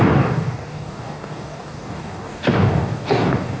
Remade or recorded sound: remade